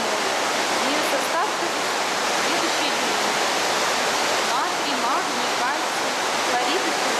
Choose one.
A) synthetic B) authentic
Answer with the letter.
B